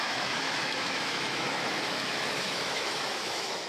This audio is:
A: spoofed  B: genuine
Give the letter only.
A